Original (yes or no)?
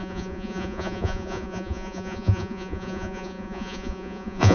no